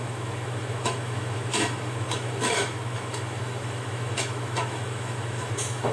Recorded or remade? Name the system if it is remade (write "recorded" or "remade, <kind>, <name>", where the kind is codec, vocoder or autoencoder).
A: remade, autoencoder, DAC-VAE